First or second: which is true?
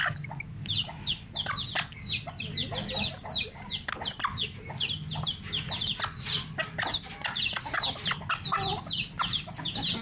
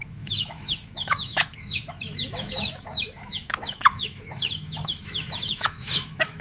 first